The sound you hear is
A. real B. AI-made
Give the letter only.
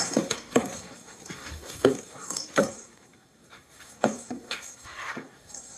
B